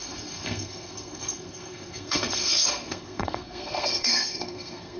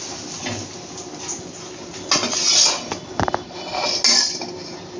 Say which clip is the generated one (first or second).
first